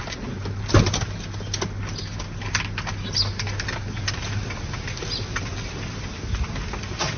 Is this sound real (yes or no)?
yes